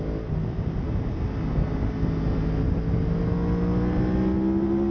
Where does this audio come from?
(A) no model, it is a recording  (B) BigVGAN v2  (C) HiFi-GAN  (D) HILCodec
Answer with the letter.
A